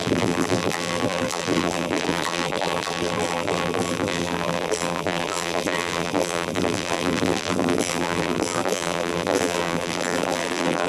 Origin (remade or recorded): remade